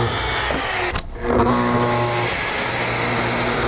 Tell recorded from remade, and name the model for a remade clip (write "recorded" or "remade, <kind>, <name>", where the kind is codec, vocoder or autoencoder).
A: recorded